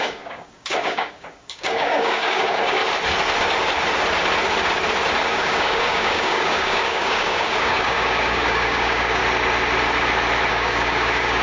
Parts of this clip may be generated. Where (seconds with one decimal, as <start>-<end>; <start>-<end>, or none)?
0.0-2.8; 5.2-9.2; 10.5-11.4